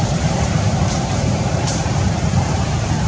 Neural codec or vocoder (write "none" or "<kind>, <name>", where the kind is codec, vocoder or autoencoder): vocoder, BigVGAN v2